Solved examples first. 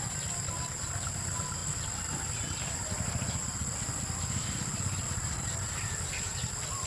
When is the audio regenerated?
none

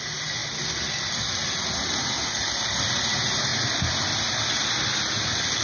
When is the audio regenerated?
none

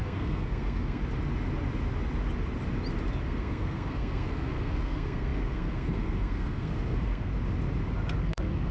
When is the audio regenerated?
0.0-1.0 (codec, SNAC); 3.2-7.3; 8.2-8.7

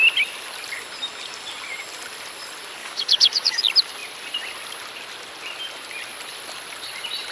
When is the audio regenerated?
2.8-3.6 (codec, DAC)

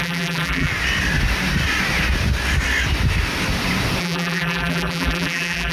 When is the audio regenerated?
0.0-0.7 (vocoder, BigVGAN v2); 4.0-5.7

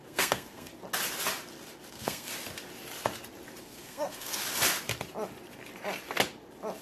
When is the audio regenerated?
0.0-0.7 (codec, SNAC); 1.9-2.3; 3.6-4.4

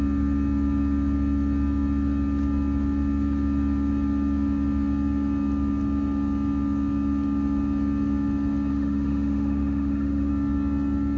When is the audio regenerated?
8.7-10.3 (autoencoder, DAC-VAE)

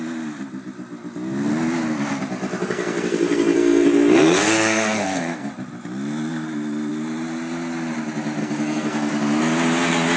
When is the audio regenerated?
2.6-5.5 (codec, SNAC); 8.4-9.1